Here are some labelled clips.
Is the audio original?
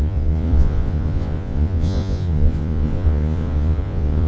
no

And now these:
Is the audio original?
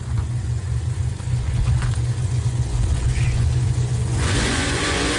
no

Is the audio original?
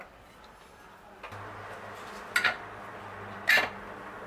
yes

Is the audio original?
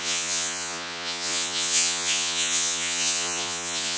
no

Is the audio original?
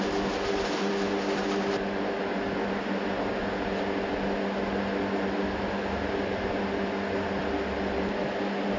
yes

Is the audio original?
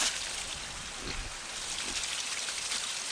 yes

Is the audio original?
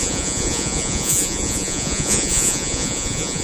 no